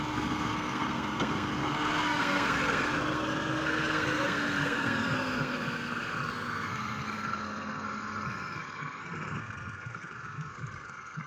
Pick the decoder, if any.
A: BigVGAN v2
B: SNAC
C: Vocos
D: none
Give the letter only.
B